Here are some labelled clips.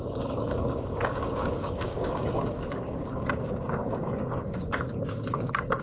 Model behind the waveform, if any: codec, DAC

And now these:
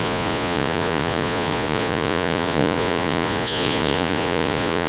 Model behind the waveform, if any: vocoder, Vocos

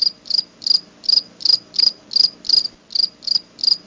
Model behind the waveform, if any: none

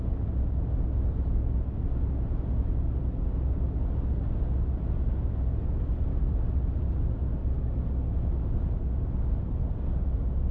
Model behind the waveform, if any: none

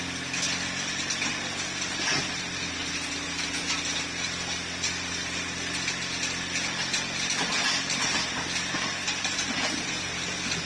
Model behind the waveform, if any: none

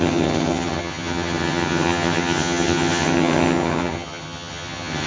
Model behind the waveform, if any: vocoder, HiFi-GAN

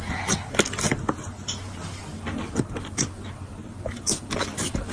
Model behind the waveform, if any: none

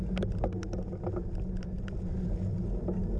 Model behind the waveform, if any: none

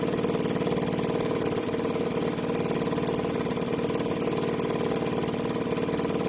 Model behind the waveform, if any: none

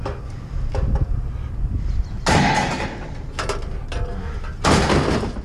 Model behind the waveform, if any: none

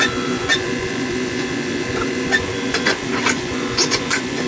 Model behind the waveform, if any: vocoder, Vocos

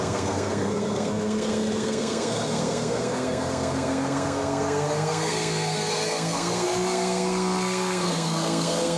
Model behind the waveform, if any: codec, SNAC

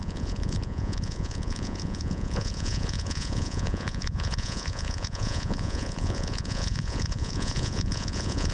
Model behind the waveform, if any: vocoder, Vocos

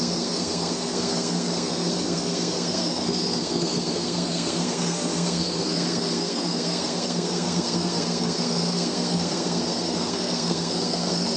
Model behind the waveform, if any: codec, SNAC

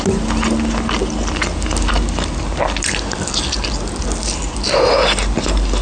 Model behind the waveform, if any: none